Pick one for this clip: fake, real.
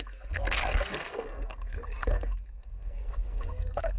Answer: fake